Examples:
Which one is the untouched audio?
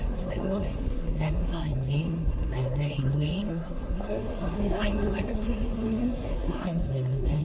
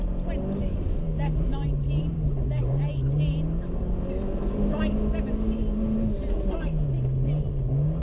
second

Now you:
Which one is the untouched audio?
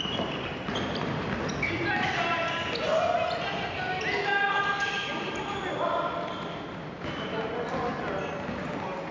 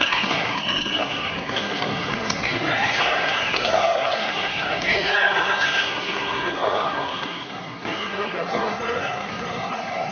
first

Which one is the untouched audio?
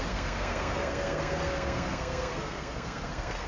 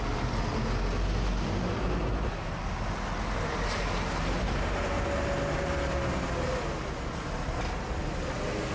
second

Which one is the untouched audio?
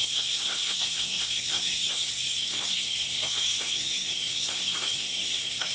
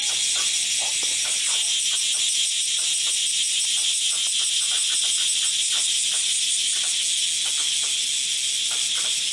second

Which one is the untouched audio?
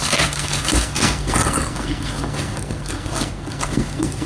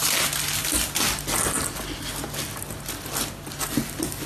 second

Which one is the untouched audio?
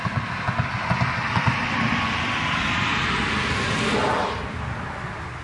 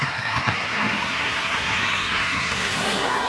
first